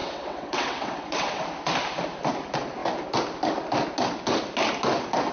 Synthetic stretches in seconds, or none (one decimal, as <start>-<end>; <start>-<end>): 0.0-1.4